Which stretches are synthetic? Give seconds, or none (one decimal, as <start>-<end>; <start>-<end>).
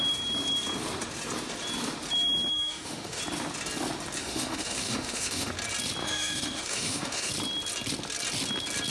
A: 2.5-3.2; 4.2-5.5; 6.0-7.3